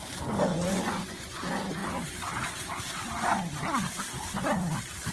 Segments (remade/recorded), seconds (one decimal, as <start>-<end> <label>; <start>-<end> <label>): 0.0-0.5 recorded; 0.5-1.4 remade; 1.4-5.1 recorded